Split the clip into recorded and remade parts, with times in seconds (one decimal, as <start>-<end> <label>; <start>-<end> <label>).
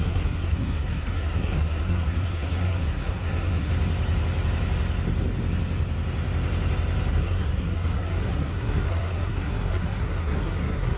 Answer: 0.0-3.7 remade; 3.7-7.1 recorded; 7.1-11.0 remade